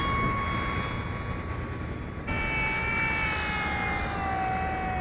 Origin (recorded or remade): recorded